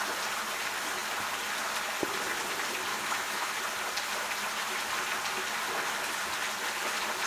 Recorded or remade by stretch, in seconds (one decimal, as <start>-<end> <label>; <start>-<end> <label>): 0.0-2.9 recorded; 2.9-3.5 remade; 3.5-7.3 recorded